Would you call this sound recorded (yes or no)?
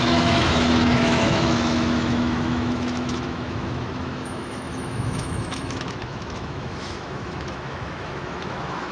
no